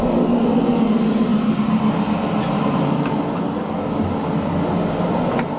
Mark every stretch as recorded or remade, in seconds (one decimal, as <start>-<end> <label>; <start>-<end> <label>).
0.0-5.6 recorded